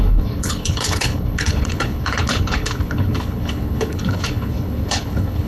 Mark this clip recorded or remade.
remade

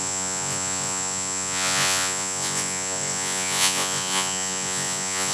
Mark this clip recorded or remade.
remade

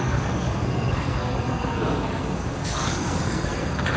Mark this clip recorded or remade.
remade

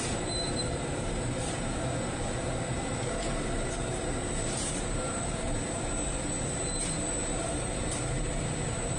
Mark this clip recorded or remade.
remade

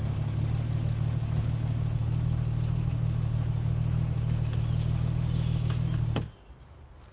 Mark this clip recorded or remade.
recorded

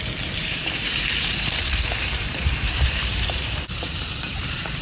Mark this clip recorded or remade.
remade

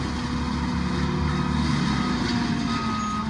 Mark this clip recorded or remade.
recorded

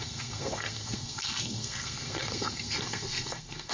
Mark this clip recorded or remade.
remade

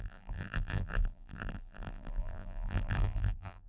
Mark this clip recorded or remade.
remade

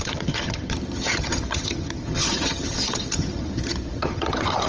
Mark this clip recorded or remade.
remade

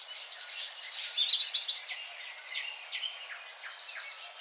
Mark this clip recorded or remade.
recorded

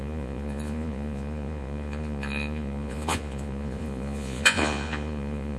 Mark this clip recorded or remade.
remade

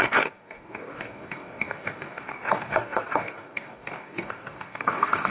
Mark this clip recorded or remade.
remade